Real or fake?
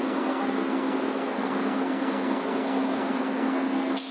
fake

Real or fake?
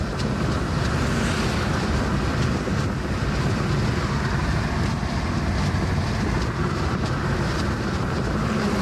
real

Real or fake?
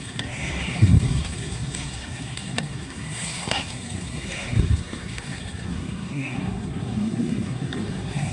fake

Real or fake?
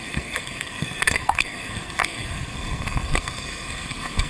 fake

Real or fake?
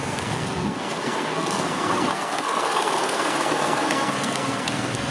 fake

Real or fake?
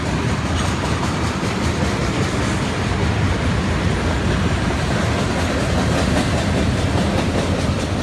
real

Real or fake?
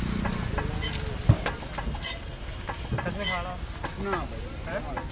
real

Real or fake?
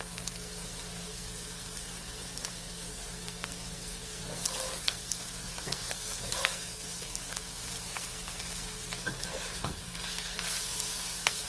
fake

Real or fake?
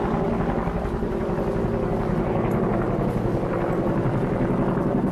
real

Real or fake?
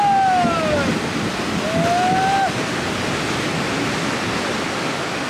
real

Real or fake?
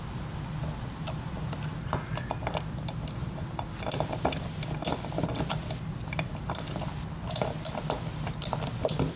real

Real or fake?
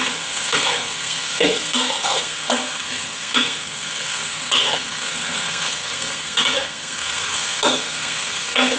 fake